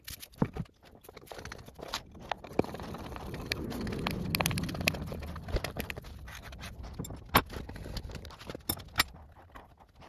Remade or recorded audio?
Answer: recorded